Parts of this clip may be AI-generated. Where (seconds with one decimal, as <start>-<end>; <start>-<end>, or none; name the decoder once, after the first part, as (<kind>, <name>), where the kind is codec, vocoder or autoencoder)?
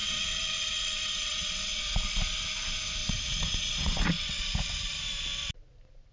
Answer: 0.0-1.8 (vocoder, WaveNeXt); 3.0-4.4